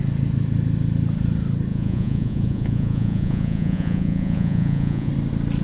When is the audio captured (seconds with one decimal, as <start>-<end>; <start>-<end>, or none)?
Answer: 0.0-1.7; 5.1-5.6